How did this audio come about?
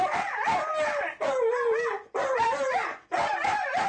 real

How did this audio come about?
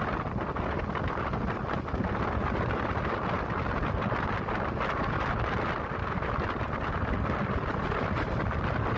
real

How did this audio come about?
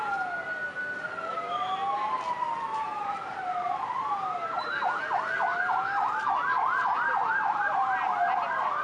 real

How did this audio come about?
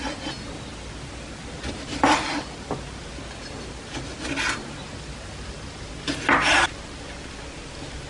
real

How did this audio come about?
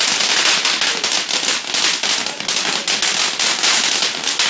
real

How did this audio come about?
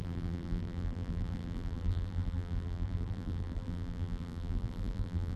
fake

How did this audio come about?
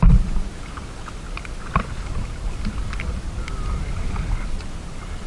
real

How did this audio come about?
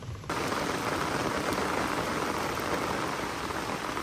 real